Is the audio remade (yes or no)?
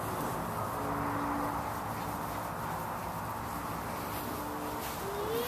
no